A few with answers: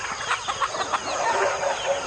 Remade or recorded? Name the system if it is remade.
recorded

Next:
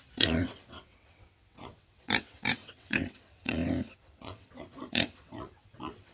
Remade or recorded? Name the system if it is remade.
remade, vocoder, WaveNeXt